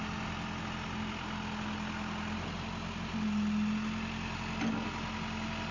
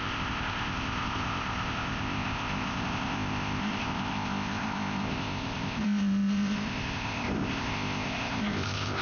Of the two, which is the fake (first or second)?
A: second